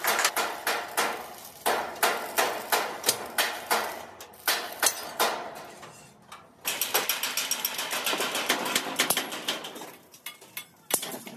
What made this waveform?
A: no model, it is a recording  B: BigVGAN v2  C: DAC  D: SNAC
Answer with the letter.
A